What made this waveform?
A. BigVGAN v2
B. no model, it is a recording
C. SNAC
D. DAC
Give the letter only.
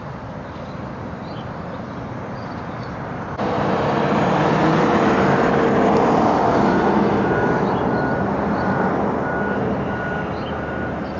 B